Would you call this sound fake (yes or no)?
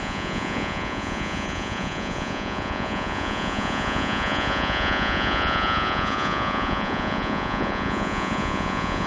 yes